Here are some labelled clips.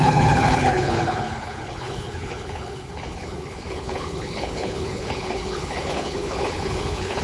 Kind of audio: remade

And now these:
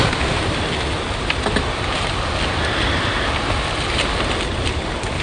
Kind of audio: recorded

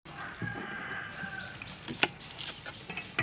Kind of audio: recorded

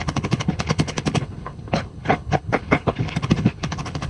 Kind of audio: remade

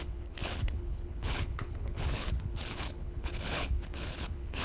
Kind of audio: remade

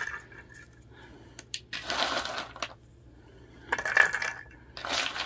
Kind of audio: recorded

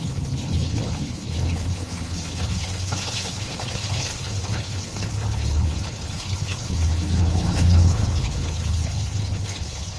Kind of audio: remade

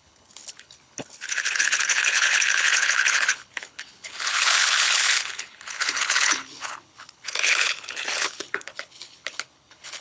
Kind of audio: remade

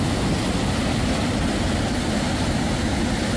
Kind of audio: recorded